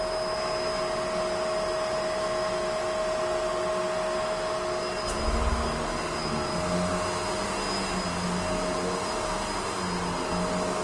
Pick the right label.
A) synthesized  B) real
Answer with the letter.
B